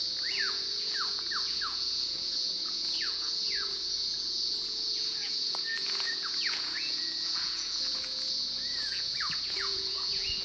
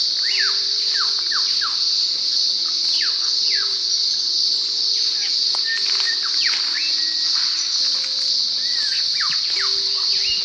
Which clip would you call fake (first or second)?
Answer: first